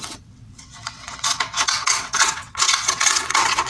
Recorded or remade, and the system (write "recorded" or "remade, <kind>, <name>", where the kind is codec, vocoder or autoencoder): remade, vocoder, WaveNeXt